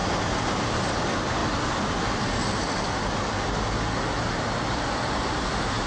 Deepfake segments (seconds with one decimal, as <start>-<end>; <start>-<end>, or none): none